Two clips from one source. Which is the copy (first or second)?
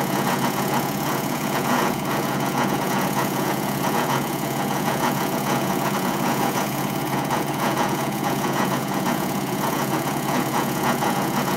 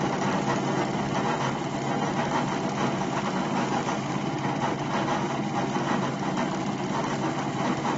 first